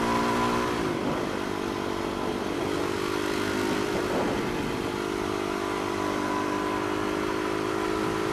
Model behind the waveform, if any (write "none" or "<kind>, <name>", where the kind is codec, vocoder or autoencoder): none